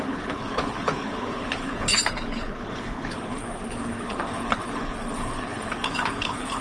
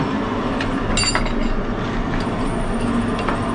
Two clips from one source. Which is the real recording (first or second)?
second